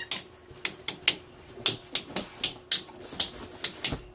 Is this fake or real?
real